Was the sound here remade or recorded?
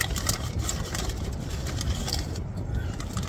recorded